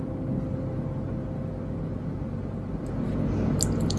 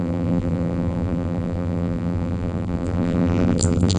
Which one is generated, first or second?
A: second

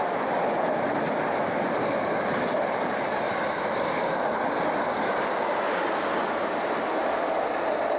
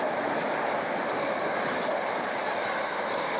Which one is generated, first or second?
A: first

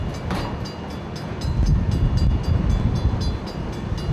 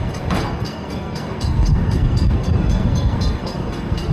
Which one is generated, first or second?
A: second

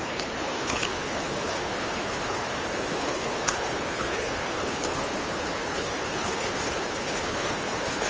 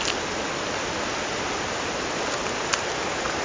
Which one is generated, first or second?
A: first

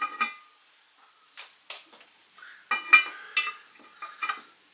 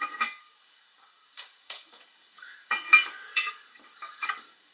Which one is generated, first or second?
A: second